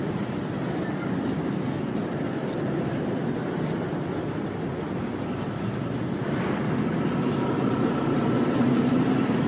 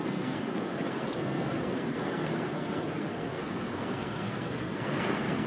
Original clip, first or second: first